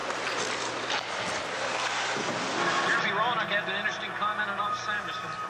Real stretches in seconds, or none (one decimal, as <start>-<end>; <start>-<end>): 0.0-5.5